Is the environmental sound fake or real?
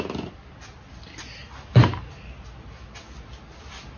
real